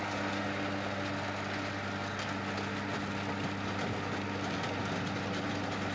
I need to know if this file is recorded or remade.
recorded